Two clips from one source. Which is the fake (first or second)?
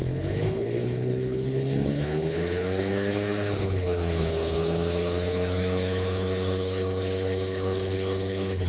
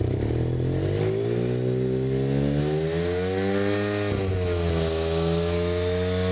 first